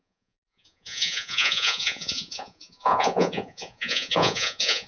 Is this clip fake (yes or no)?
yes